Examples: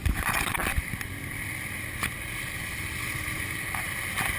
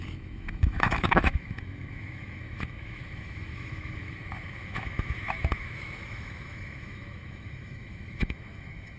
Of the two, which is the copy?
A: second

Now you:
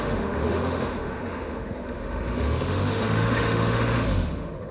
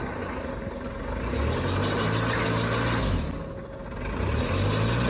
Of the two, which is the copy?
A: first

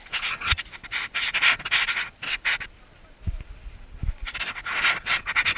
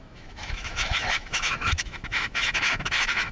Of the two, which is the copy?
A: second